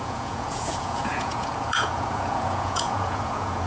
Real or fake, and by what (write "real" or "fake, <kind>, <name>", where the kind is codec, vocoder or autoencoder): fake, vocoder, Vocos